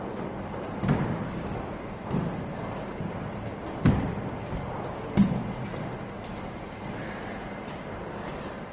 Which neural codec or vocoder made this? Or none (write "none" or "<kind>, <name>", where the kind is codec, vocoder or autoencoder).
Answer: none